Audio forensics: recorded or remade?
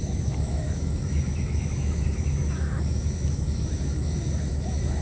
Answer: remade